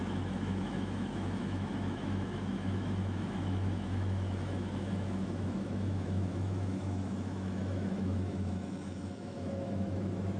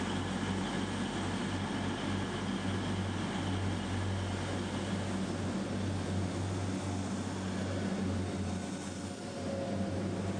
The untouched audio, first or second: second